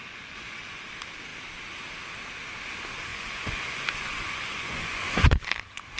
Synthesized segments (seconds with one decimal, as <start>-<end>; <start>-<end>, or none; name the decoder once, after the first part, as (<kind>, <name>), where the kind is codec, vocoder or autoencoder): 0.0-0.8 (vocoder, Vocos); 3.1-5.4